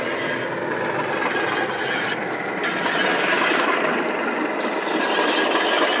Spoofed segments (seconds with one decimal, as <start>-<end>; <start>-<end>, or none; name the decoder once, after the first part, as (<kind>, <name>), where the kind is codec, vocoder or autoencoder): 3.1-3.8 (codec, DAC)